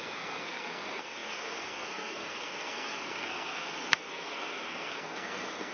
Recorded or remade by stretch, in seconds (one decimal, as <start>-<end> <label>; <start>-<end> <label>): 0.0-5.7 remade